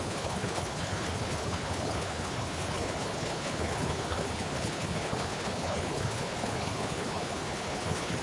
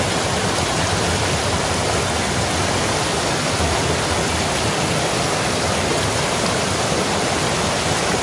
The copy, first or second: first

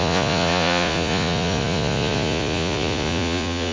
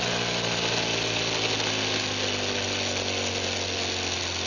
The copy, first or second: first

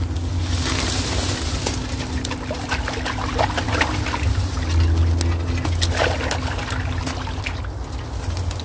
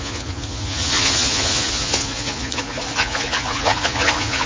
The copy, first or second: second